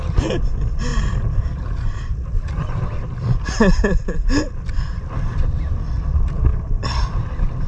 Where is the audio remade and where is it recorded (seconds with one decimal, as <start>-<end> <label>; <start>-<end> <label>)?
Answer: 0.0-7.7 recorded